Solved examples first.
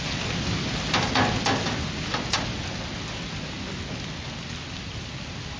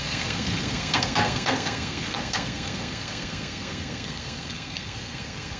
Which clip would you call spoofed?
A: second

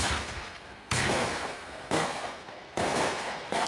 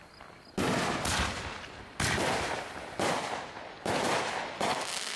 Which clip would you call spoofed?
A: first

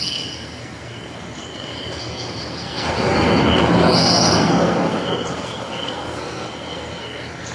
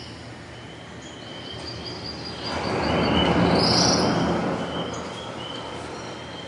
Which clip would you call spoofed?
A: first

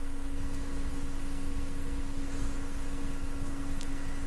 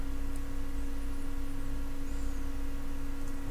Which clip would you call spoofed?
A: first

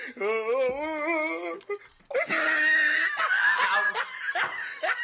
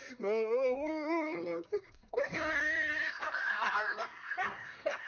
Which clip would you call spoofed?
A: second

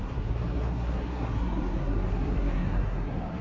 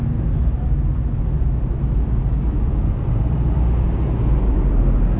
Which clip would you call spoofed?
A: first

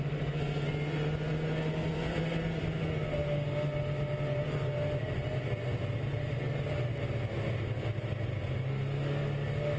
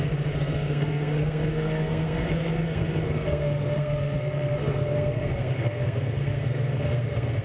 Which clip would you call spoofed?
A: second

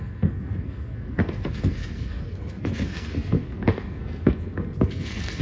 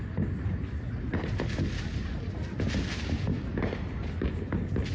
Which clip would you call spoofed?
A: first